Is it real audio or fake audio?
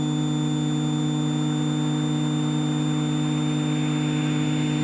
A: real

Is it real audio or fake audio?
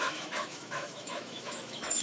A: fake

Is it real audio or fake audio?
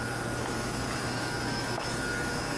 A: fake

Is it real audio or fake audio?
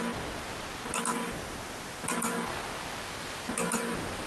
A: real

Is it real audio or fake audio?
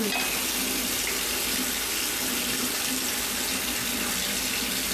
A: real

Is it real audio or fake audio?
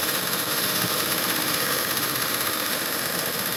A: fake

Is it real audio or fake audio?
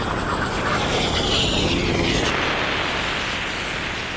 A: real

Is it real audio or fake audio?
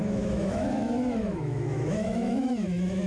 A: fake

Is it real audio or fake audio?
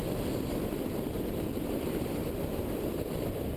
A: real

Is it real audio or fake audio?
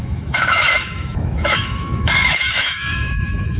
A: fake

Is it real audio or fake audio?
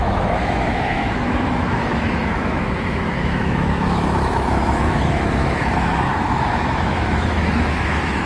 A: fake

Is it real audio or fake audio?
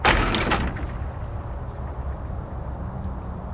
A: real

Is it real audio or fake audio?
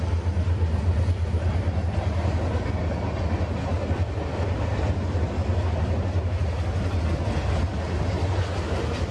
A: real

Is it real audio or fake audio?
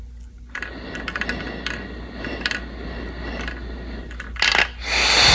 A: real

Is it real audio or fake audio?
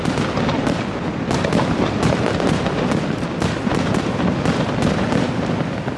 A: real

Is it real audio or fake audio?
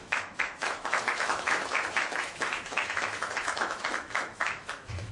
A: fake